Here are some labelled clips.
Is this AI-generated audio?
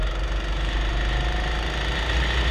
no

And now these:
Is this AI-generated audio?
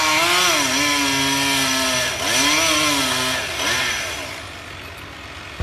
no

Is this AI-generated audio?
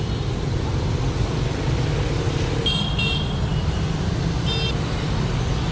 no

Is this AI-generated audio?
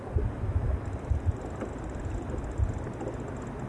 no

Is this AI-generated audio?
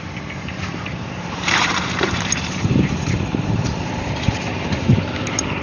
yes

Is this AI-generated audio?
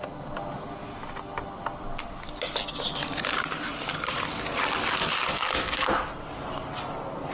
no